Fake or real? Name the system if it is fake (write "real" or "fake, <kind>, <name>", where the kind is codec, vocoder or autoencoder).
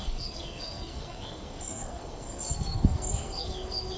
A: fake, codec, SNAC